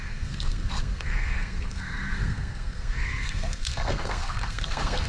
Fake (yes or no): yes